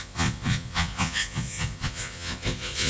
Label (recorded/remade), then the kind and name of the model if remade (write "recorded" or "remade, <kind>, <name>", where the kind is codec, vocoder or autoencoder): remade, vocoder, Vocos